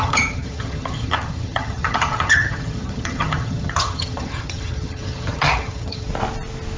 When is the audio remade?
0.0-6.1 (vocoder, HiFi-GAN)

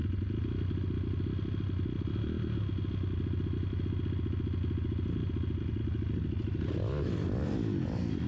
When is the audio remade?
none

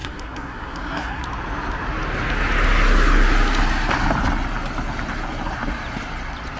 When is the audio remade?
0.0-1.2 (codec, SNAC)

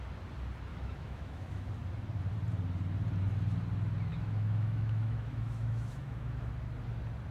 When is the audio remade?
0.7-1.7 (autoencoder, DAC-VAE); 4.1-6.5

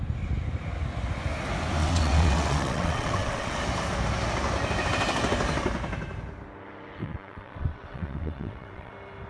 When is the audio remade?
1.8-3.6 (vocoder, WaveNeXt); 7.0-8.9